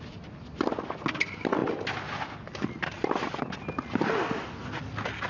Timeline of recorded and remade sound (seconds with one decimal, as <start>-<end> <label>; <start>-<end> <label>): 0.0-5.3 recorded